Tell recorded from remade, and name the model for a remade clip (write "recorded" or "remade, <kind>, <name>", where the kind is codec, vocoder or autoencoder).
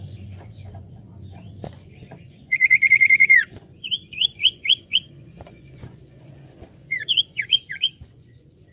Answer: remade, vocoder, Vocos